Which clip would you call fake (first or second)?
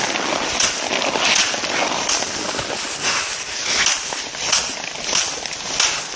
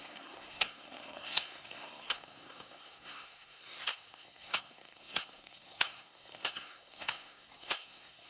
second